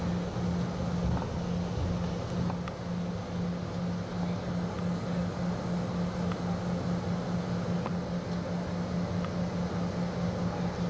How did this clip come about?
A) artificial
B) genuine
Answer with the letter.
B